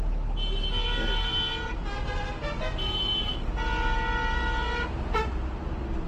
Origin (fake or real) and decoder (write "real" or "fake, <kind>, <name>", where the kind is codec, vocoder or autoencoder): real